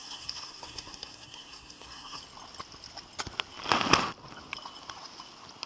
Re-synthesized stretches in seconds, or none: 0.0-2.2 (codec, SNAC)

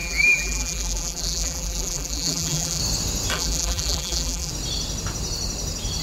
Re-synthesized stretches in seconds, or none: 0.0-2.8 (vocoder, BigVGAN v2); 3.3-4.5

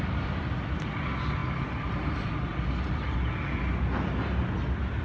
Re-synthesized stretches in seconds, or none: none

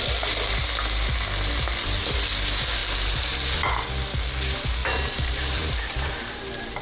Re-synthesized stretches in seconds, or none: 4.8-6.8 (vocoder, BigVGAN v2)

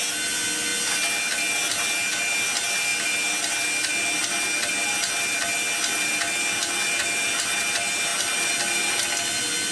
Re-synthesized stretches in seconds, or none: none